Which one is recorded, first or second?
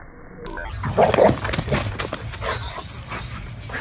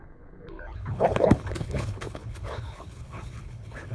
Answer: first